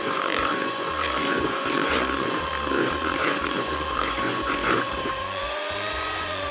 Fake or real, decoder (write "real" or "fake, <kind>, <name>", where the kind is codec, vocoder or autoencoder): fake, vocoder, Vocos